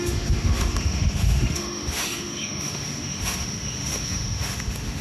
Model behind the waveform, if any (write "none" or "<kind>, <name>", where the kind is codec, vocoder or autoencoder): autoencoder, DAC-VAE